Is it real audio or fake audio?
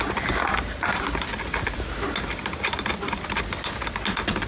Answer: real